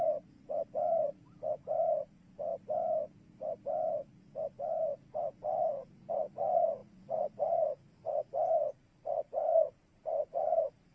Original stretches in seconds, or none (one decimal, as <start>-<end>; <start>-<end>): none